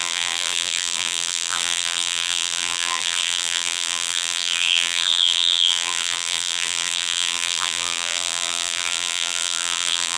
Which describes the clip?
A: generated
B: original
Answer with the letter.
A